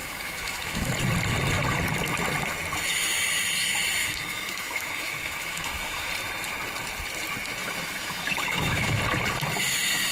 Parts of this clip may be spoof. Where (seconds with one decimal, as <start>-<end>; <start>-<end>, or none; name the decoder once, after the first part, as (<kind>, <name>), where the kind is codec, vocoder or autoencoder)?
0.0-0.9 (autoencoder, DAC-VAE); 4.0-6.1; 7.6-9.0